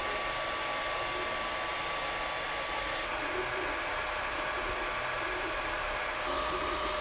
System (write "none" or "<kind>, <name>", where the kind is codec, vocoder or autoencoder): none